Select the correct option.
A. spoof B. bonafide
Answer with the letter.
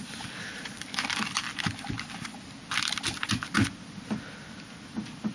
B